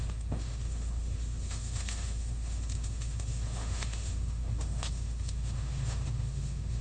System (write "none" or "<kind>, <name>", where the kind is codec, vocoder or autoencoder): autoencoder, DAC-VAE